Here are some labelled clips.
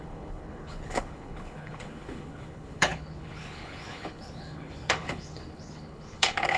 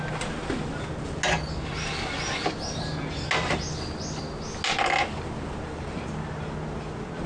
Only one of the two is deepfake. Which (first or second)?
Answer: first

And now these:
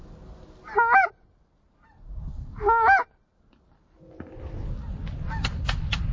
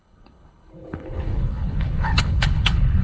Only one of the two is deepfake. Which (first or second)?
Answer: second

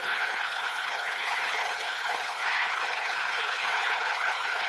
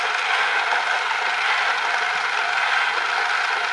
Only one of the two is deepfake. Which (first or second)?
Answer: first